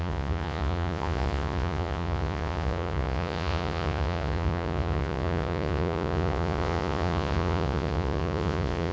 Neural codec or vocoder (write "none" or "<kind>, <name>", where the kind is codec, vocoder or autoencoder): vocoder, Vocos